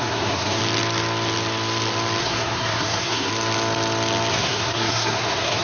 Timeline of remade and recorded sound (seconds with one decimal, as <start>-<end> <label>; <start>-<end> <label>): 0.0-0.6 remade; 0.6-2.2 recorded; 2.2-3.3 remade; 3.3-4.3 recorded; 4.3-5.6 remade